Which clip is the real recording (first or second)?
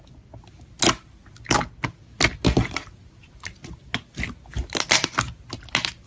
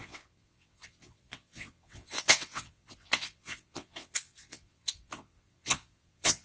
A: first